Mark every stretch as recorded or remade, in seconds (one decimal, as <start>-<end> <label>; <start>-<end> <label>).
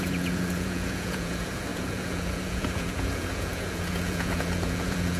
0.0-5.2 remade